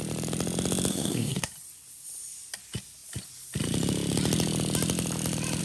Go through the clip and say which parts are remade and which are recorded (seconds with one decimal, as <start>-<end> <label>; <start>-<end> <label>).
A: 0.0-0.9 recorded; 0.9-1.5 remade; 1.5-5.6 recorded